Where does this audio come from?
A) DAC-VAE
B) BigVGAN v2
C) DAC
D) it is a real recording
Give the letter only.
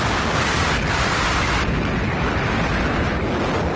D